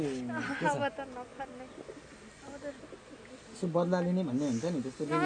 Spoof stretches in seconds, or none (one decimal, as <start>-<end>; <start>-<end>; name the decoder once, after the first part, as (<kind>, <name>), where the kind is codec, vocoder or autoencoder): none